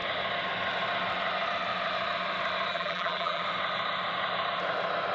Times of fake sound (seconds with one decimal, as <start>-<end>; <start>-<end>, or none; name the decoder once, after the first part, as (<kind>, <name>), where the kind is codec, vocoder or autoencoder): 2.7-3.4 (vocoder, BigVGAN v2)